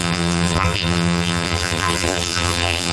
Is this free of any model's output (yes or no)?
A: no